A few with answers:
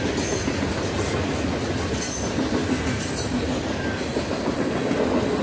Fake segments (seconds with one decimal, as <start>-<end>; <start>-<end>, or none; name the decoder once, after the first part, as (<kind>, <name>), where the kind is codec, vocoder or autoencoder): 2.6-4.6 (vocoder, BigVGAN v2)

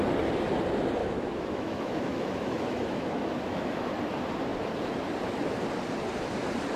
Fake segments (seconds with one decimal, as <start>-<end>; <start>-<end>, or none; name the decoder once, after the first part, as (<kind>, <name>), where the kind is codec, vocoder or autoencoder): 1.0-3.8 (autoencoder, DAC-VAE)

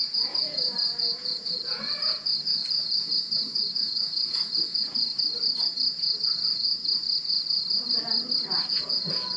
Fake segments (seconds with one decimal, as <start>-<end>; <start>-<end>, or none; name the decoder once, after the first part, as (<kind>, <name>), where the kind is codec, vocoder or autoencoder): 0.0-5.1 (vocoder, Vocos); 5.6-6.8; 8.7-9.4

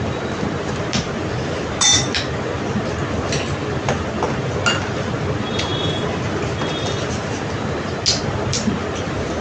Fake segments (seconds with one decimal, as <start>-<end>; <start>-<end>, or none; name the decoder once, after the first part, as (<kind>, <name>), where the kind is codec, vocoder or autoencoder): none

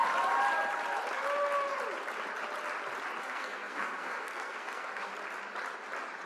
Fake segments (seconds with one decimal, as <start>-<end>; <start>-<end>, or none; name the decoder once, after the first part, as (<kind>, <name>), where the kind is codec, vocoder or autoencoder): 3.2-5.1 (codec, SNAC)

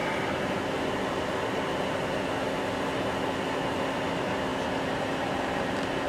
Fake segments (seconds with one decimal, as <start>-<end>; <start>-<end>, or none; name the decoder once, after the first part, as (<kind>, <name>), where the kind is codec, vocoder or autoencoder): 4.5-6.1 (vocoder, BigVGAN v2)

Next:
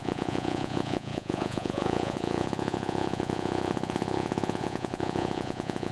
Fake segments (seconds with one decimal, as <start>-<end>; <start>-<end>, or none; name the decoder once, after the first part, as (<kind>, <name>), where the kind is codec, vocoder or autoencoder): 0.0-5.9 (vocoder, Vocos)